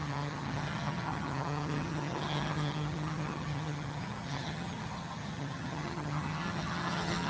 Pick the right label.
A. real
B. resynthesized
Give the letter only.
B